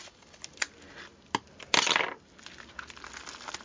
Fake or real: real